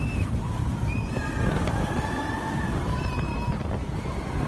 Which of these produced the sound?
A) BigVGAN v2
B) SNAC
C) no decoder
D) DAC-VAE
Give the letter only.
C